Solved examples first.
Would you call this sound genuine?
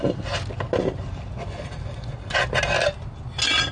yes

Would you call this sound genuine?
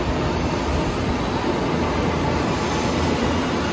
yes